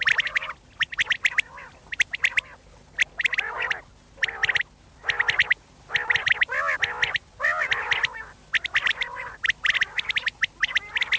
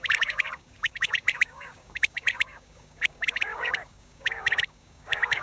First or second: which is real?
first